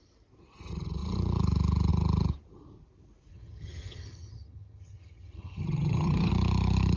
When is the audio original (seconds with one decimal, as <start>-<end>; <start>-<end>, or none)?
0.0-3.3; 6.3-7.0